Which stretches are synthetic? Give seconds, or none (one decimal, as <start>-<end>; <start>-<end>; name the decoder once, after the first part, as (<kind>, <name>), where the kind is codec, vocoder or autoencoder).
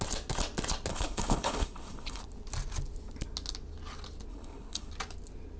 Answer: 0.9-2.2 (codec, HILCodec); 4.3-4.9